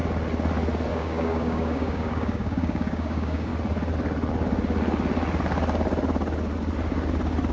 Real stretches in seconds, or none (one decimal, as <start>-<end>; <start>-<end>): 0.0-0.9; 3.5-7.5